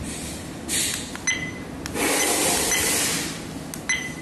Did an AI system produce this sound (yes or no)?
no